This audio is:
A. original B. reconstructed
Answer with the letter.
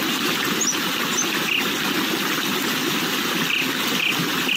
A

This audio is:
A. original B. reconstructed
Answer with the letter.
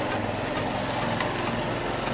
A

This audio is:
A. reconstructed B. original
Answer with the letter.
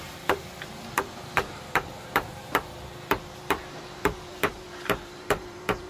A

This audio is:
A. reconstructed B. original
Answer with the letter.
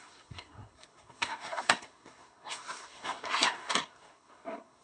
A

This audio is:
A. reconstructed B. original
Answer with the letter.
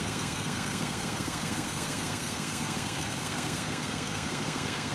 A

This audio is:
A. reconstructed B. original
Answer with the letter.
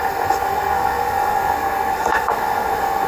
A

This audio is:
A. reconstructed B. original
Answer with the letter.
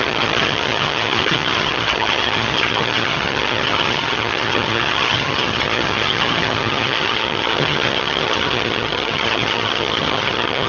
A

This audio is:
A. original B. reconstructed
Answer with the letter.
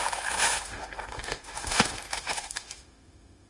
B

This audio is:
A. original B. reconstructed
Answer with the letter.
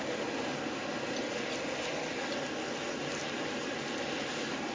A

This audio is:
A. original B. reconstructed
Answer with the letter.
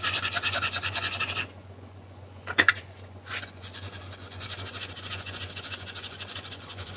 B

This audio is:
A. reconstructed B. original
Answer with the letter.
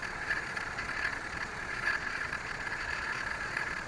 A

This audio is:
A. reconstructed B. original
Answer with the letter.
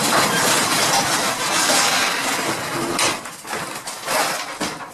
B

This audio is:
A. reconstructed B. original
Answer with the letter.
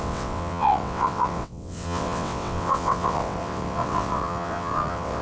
A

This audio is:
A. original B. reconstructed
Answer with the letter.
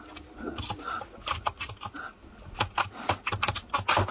A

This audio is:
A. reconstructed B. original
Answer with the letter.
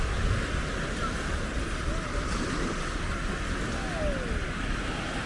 B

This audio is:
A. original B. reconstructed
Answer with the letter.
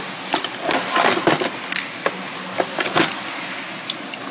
A